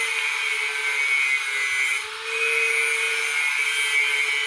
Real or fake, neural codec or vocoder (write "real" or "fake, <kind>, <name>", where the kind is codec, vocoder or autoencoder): real